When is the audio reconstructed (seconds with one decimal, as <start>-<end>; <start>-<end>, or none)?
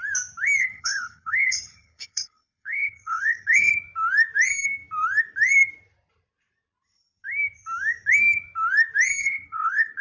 0.6-3.7; 9.2-10.0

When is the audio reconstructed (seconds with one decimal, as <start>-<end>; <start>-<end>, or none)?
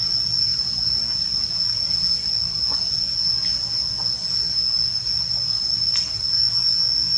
none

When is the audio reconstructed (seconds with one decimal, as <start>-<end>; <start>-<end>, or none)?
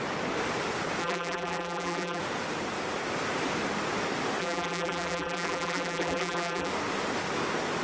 1.0-2.2; 4.4-6.7